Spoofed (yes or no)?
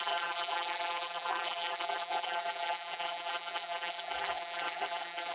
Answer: yes